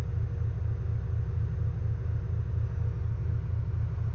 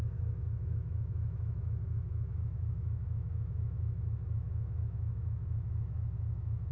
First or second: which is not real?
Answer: second